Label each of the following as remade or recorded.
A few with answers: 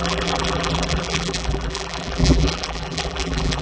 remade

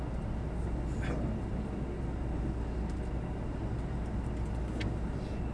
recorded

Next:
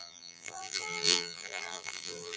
remade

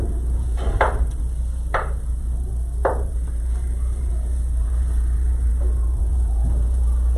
remade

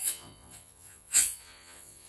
remade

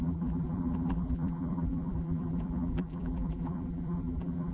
remade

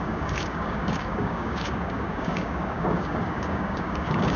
remade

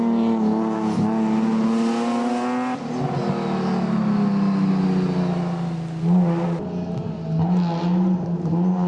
recorded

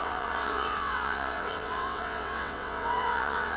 remade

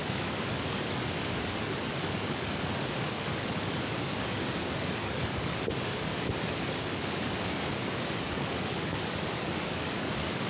remade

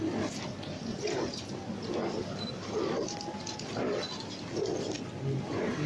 recorded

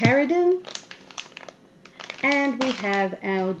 recorded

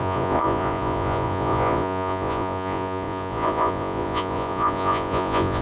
remade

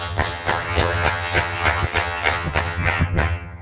remade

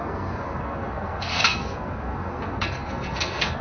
remade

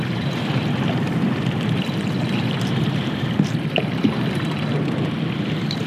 remade